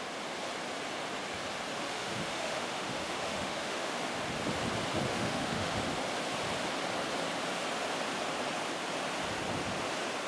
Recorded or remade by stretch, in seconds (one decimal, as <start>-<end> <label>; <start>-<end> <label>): 0.0-1.7 recorded; 1.7-4.0 remade; 4.0-5.1 recorded; 5.1-5.8 remade; 5.8-10.3 recorded